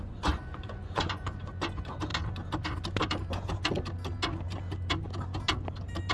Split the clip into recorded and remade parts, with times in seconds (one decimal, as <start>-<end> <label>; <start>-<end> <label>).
0.0-2.1 remade; 2.1-6.1 recorded